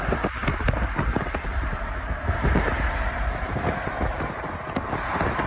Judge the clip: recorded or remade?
recorded